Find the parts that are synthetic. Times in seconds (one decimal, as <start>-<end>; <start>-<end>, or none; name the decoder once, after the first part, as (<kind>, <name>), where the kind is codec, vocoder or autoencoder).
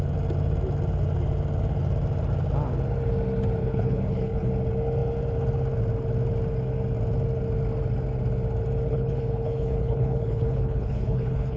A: 3.6-4.5 (codec, HILCodec); 8.9-11.6